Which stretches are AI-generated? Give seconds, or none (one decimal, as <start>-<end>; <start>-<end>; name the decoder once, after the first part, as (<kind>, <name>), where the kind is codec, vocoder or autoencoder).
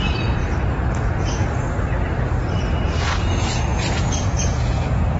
0.0-0.4 (vocoder, Vocos); 2.9-5.2